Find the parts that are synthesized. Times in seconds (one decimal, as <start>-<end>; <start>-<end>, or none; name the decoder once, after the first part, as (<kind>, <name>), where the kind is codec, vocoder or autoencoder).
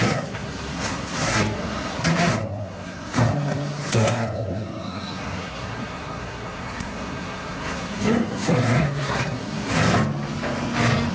0.0-9.7 (codec, SNAC)